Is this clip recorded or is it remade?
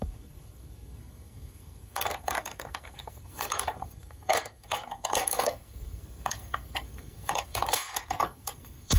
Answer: remade